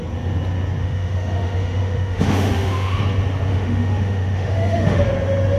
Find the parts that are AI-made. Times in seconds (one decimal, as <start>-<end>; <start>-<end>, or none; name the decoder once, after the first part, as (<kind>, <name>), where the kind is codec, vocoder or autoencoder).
0.8-3.0 (autoencoder, DAC-VAE); 3.5-5.0